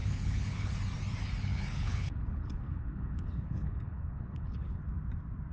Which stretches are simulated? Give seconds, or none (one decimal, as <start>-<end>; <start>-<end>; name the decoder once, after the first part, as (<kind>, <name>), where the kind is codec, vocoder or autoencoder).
0.0-0.7 (codec, HILCodec); 1.5-4.8